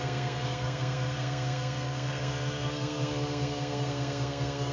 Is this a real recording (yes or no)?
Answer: no